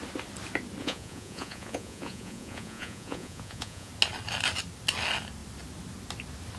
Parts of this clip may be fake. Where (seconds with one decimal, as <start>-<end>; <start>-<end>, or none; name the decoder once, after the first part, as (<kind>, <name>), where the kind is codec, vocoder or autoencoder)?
0.8-3.9 (vocoder, Vocos)